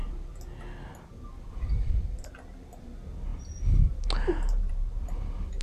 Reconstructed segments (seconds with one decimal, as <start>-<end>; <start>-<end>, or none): none